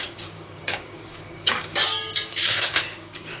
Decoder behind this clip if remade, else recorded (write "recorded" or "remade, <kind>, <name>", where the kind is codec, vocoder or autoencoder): remade, codec, DAC